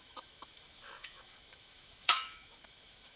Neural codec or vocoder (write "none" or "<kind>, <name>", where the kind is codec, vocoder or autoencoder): autoencoder, DAC-VAE